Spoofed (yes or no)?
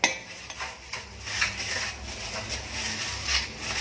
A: no